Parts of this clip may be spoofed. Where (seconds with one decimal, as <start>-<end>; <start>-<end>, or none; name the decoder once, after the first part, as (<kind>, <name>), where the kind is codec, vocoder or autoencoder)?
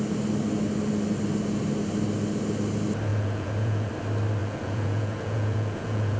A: 3.1-3.9 (vocoder, Vocos); 4.4-6.2